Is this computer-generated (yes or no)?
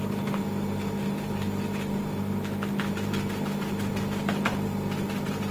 no